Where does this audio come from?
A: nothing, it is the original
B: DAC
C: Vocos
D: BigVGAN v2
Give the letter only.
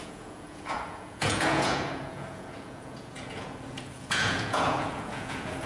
C